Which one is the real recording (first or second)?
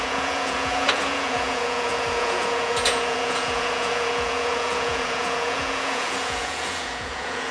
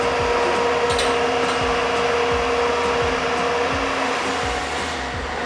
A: second